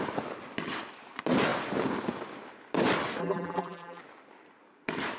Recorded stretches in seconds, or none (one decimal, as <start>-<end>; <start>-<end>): 0.0-3.2; 4.0-5.2